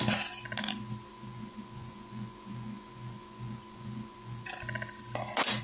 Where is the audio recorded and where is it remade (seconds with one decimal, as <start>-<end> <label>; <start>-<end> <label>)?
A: 0.0-1.1 recorded; 1.1-4.5 remade; 4.5-5.6 recorded

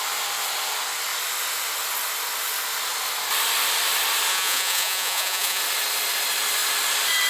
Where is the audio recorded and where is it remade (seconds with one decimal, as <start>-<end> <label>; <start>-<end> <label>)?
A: 0.0-4.3 recorded; 4.3-5.6 remade; 5.6-7.3 recorded

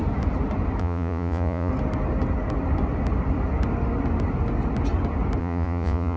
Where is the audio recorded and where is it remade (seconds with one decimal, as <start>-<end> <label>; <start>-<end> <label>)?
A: 0.0-0.8 recorded; 0.8-1.7 remade; 1.7-5.4 recorded; 5.4-6.2 remade

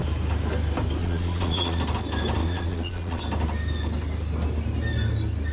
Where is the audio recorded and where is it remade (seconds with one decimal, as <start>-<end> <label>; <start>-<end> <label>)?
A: 0.0-1.0 recorded; 1.0-1.8 remade; 1.8-2.4 recorded; 2.4-3.2 remade; 3.2-5.5 recorded

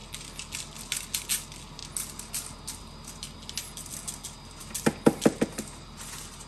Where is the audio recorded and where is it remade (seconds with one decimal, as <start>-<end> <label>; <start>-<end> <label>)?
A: 0.0-6.5 recorded

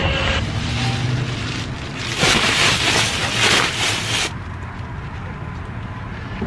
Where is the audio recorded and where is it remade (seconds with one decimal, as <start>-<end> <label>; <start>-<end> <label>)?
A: 0.0-6.5 recorded